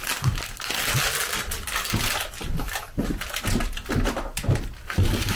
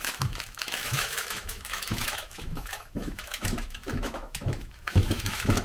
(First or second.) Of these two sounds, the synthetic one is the second